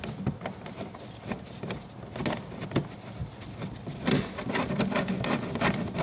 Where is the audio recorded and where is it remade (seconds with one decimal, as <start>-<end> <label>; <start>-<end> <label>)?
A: 0.0-6.0 recorded